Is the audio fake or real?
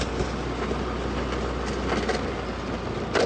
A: real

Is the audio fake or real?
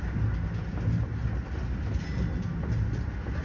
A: real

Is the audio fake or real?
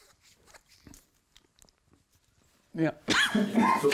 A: real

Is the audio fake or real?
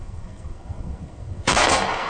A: fake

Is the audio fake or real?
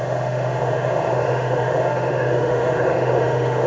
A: fake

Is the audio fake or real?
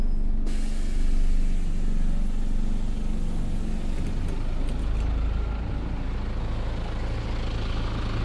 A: real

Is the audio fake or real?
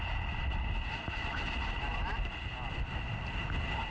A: real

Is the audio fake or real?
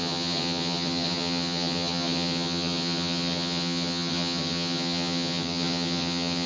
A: fake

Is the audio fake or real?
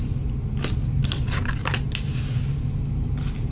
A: real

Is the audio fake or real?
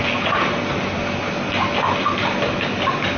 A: real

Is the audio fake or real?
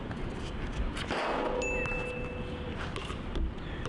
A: real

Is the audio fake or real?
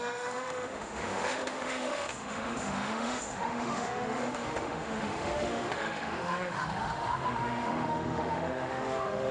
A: fake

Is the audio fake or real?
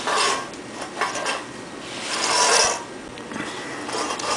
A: real